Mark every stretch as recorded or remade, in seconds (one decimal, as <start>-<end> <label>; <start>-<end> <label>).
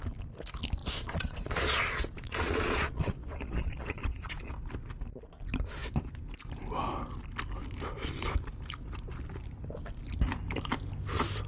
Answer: 0.0-0.8 recorded; 0.8-4.5 remade; 4.5-11.5 recorded